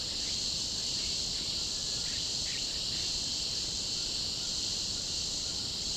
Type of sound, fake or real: real